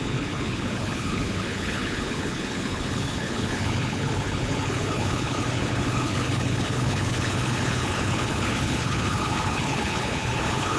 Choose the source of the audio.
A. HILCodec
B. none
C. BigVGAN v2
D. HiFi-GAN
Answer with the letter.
A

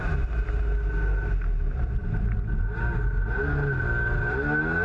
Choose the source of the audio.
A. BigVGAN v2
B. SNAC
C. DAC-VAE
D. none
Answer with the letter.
D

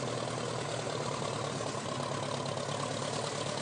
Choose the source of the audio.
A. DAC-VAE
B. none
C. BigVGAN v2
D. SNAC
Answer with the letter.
B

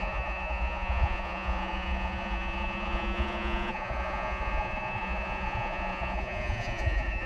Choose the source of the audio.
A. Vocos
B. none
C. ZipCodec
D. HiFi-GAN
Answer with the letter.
A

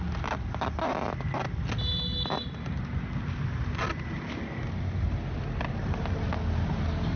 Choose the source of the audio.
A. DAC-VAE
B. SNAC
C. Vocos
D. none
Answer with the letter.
D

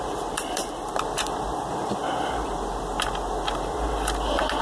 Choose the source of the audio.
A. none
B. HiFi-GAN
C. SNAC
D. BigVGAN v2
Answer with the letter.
D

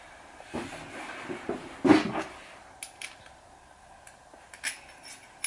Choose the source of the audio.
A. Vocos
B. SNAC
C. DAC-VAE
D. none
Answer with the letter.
D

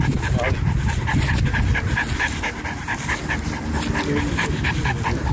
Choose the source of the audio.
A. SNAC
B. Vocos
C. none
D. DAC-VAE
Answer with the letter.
C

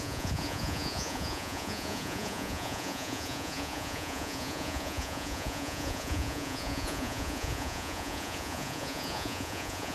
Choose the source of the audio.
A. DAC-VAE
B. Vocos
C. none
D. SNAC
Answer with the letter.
B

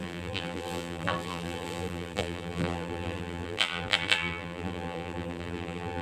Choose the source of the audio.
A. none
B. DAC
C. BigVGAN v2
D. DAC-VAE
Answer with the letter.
C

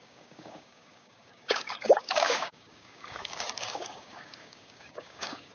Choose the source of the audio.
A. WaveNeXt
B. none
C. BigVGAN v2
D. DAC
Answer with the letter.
D